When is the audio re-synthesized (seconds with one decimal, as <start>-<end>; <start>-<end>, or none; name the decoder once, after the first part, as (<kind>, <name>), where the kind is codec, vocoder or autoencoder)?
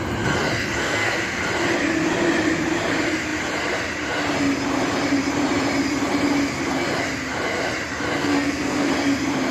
0.8-1.4 (codec, SNAC); 8.2-8.9